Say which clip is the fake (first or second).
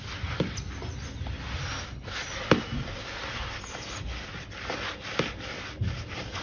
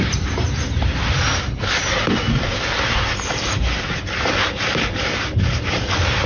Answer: second